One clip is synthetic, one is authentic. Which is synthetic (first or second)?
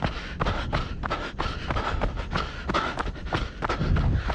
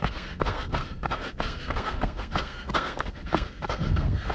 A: second